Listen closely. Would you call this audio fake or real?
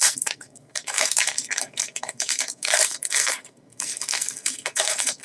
fake